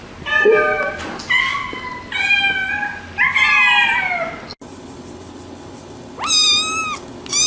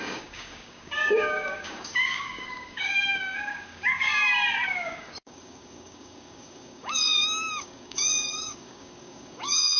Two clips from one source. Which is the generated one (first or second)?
second